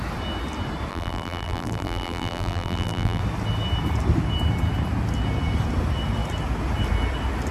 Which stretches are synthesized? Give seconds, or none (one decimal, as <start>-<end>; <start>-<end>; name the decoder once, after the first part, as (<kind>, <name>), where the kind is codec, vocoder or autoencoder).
0.9-3.2 (vocoder, BigVGAN v2)